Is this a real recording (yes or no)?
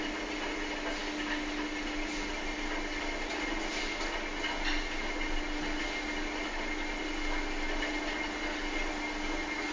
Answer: yes